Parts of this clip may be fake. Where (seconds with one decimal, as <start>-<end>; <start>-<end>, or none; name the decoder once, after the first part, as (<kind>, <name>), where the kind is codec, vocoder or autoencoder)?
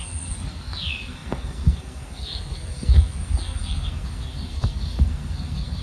0.0-5.8 (codec, SNAC)